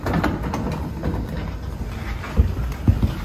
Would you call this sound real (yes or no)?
yes